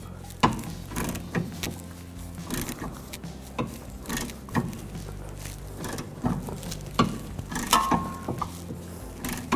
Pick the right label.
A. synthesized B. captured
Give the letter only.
B